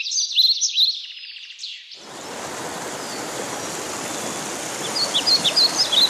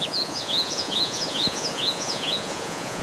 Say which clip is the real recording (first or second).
first